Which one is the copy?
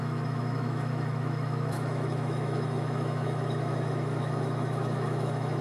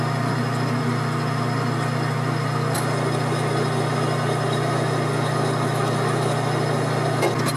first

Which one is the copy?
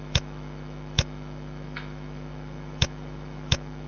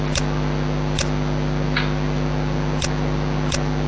first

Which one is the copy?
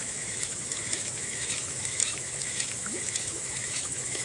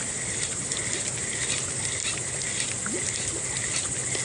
first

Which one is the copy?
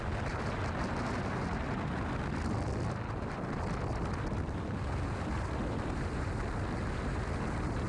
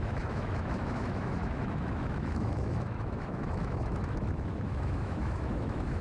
second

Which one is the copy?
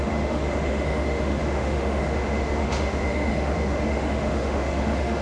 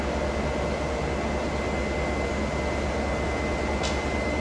first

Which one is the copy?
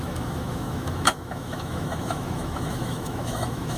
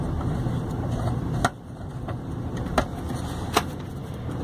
first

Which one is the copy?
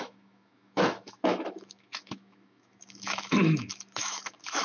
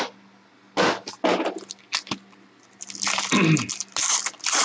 first